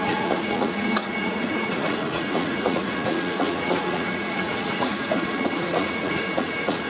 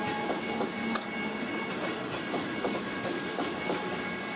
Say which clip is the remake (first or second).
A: first